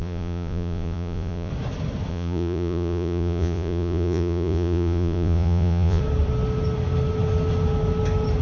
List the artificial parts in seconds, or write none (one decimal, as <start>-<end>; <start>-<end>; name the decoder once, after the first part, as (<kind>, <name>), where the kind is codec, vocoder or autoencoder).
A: 0.0-1.5 (vocoder, Vocos); 2.1-6.0